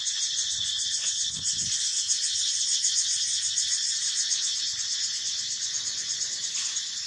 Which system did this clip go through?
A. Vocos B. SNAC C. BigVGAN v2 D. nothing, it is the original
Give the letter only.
A